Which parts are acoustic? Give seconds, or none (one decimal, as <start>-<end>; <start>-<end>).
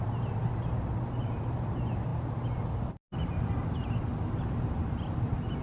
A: 0.0-5.6